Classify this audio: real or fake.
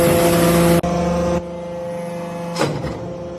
real